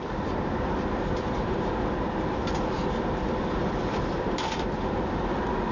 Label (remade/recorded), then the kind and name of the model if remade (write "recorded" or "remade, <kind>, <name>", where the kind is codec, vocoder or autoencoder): remade, vocoder, BigVGAN v2